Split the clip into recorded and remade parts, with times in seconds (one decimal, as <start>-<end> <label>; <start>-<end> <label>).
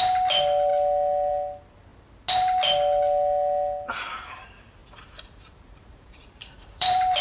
0.0-4.8 recorded; 4.8-7.2 remade